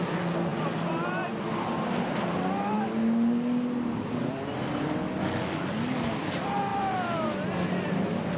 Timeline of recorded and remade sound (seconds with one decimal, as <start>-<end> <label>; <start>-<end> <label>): 0.0-8.4 recorded